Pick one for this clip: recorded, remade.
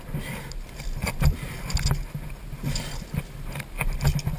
recorded